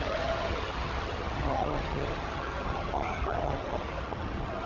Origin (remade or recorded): remade